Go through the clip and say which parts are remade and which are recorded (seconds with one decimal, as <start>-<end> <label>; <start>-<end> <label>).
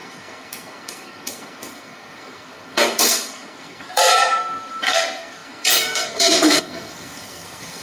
0.0-7.8 remade